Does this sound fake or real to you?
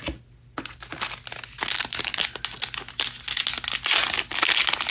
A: real